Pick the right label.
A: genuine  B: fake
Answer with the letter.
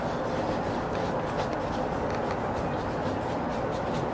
A